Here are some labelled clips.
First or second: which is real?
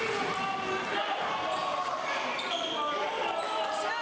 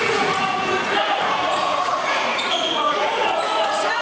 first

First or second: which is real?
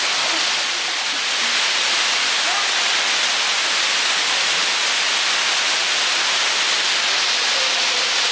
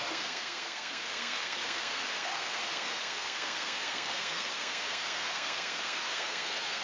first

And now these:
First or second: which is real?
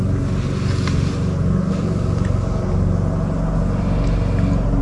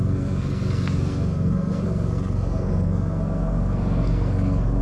first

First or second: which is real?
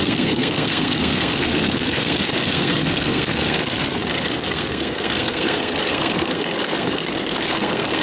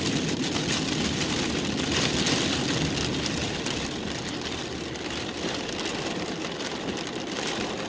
second